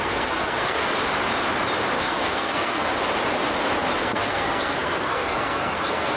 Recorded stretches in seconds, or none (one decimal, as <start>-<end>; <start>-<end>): 0.9-2.0; 2.9-4.0